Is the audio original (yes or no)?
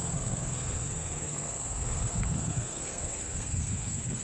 no